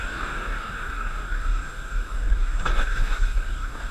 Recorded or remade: remade